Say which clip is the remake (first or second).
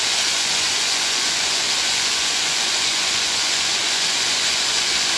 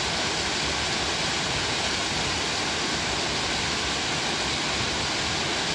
first